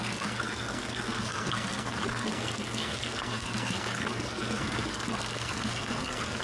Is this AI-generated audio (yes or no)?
yes